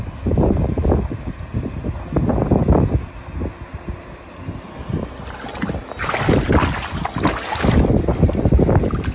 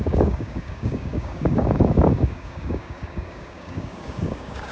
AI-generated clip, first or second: second